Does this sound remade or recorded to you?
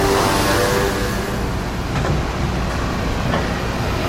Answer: recorded